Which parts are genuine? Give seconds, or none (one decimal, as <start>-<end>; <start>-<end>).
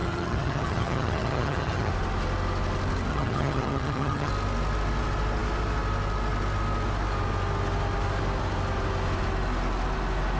1.9-3.1; 4.3-10.4